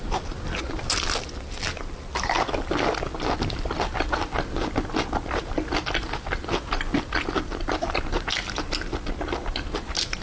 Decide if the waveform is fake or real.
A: real